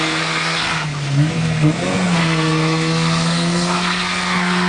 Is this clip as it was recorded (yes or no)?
no